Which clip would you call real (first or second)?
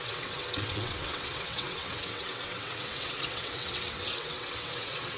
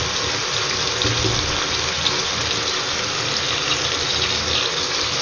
second